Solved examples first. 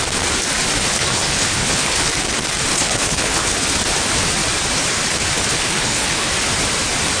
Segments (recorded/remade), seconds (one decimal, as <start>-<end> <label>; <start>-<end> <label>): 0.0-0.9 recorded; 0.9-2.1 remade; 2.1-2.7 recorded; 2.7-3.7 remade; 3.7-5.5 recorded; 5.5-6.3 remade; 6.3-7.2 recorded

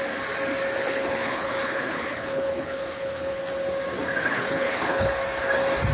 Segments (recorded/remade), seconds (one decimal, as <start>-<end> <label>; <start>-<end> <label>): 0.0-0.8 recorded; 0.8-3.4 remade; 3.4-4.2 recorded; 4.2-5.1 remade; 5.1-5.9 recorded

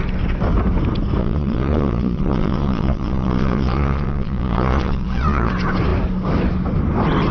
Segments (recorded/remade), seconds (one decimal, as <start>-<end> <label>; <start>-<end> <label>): 0.0-1.2 recorded; 1.2-5.5 remade; 5.5-7.3 recorded